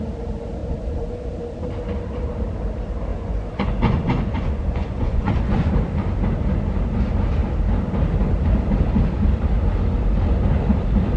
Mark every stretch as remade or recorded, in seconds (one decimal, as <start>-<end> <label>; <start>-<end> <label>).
0.0-0.6 recorded; 0.6-1.3 remade; 1.3-3.1 recorded; 3.1-5.7 remade; 5.7-11.2 recorded